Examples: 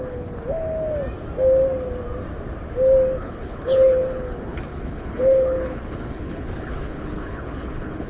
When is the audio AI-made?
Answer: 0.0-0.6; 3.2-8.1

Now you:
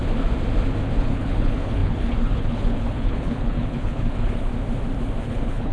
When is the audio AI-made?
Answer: 1.0-4.5; 5.2-5.7